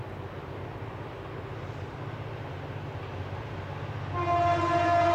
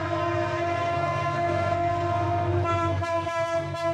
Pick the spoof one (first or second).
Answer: second